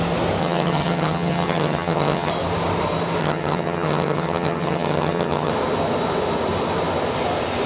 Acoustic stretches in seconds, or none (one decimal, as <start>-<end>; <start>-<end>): 0.0-0.4; 2.3-3.2; 5.5-7.7

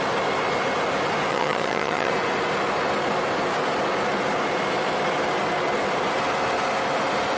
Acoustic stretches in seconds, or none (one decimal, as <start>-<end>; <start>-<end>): 0.0-1.3; 2.1-7.4